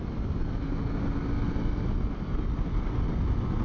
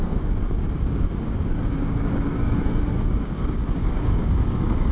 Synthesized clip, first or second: second